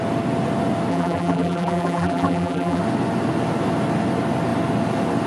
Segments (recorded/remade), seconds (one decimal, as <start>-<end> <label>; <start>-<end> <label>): 0.0-0.9 recorded; 0.9-2.8 remade; 2.8-5.3 recorded